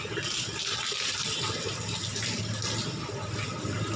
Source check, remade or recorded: recorded